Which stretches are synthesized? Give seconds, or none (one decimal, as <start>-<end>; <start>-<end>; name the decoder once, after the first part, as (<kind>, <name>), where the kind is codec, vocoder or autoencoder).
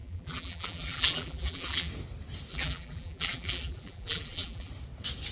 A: 0.0-1.9 (vocoder, BigVGAN v2); 2.5-4.7